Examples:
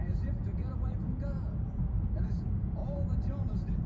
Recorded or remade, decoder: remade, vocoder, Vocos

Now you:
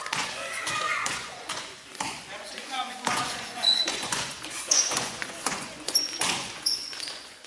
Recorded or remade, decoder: remade, vocoder, Vocos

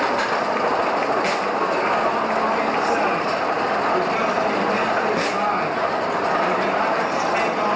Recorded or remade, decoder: recorded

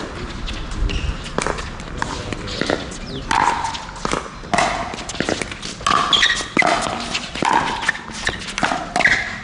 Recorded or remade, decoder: recorded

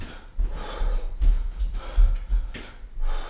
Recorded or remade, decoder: recorded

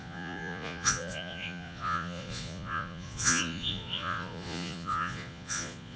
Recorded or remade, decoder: remade, vocoder, Vocos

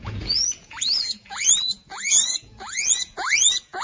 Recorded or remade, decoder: remade, vocoder, Vocos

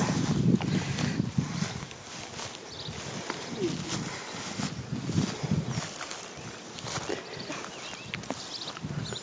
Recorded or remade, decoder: recorded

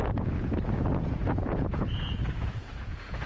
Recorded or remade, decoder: remade, vocoder, Vocos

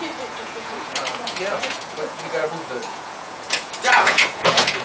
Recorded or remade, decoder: remade, vocoder, Vocos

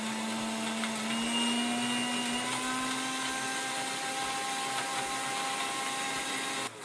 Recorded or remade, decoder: recorded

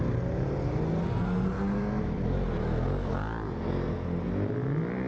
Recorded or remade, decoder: recorded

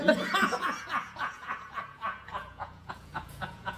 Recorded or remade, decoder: remade, vocoder, Vocos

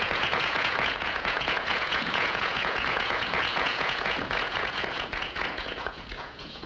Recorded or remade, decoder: remade, vocoder, Vocos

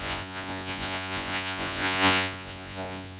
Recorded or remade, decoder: remade, vocoder, Vocos